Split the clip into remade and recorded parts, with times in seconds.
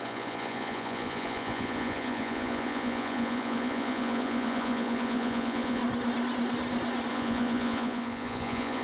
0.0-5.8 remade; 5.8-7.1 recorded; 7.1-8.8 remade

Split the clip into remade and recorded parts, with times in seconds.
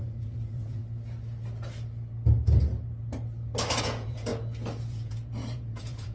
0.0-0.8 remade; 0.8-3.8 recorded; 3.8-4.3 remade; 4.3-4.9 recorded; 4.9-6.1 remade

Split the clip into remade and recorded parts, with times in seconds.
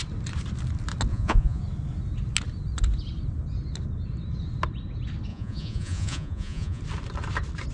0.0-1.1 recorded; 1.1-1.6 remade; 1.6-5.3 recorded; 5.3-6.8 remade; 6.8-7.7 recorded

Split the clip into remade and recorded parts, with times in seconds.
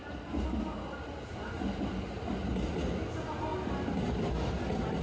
0.0-5.0 recorded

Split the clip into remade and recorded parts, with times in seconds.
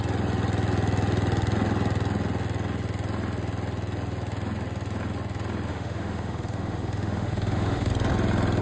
0.0-5.7 recorded; 5.7-7.9 remade; 7.9-8.6 recorded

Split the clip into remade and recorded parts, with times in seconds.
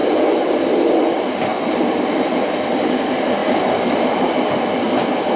0.0-1.5 recorded; 1.5-2.1 remade; 2.1-3.4 recorded; 3.4-4.2 remade; 4.2-5.4 recorded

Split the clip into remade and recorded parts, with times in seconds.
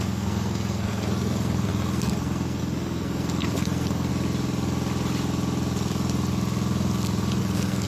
0.0-4.1 remade; 4.1-7.4 recorded; 7.4-7.9 remade